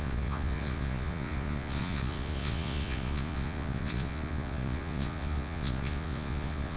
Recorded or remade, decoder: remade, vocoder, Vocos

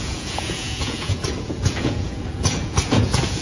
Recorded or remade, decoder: remade, vocoder, Vocos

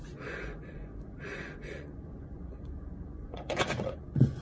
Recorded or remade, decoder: remade, vocoder, Vocos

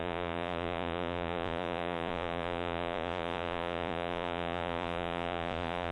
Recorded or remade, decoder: remade, vocoder, Vocos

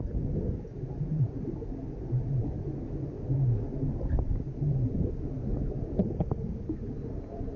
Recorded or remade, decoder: recorded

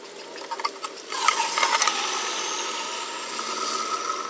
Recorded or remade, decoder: recorded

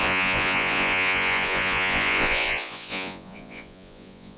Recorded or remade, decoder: remade, vocoder, Vocos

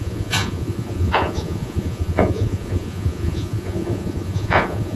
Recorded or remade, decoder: remade, vocoder, Vocos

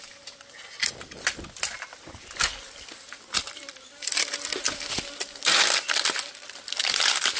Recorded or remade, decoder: recorded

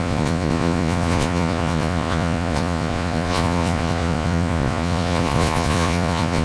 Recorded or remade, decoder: remade, vocoder, Vocos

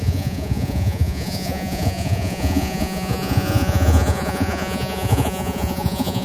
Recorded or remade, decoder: remade, vocoder, Vocos